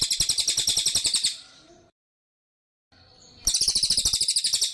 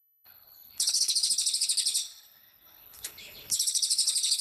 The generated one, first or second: second